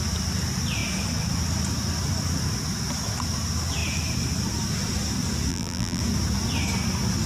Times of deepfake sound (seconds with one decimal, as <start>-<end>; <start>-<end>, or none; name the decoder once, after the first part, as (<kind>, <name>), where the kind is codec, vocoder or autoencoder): 5.5-6.0 (vocoder, BigVGAN v2)